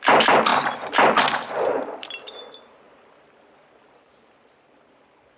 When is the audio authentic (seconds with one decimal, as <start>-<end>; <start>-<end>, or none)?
none